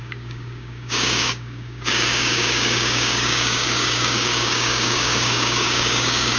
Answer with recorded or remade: remade